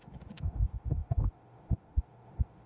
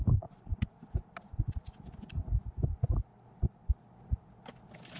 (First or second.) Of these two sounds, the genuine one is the second